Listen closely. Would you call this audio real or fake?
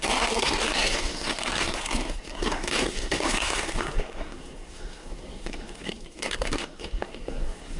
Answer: fake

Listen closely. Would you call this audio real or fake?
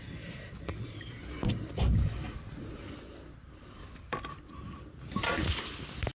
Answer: real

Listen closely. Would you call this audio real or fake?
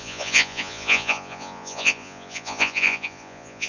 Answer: fake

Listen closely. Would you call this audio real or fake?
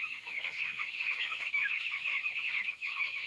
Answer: fake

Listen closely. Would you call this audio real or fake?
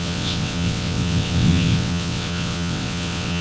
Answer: fake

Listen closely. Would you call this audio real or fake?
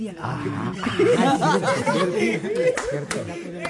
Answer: real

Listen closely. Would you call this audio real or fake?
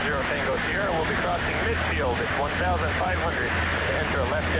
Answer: fake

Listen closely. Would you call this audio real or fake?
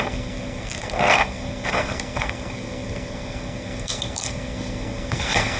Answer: fake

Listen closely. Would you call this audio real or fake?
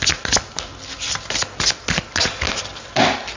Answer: real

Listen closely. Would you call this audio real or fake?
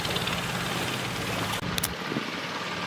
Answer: real